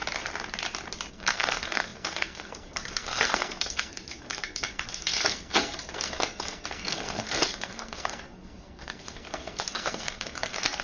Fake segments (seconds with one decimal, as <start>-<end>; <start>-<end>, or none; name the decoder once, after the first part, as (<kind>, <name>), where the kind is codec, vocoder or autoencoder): 1.1-10.8 (codec, SNAC)